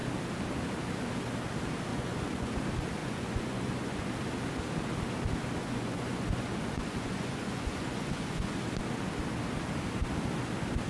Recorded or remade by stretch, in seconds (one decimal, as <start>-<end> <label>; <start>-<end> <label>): 0.0-1.9 recorded; 1.9-2.5 remade; 2.5-3.0 recorded; 3.0-4.1 remade; 4.1-5.6 recorded; 5.6-8.6 remade; 8.6-10.9 recorded

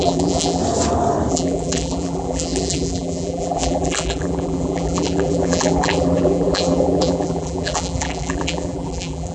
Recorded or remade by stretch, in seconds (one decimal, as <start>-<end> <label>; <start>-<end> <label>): 0.0-0.6 remade; 0.6-1.3 recorded; 1.3-9.3 remade